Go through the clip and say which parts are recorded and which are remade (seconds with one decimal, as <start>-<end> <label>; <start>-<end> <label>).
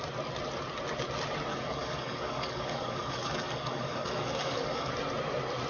0.0-1.5 recorded; 1.5-4.9 remade; 4.9-5.7 recorded